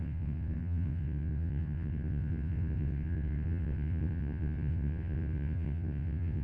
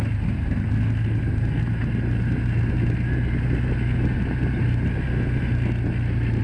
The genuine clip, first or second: second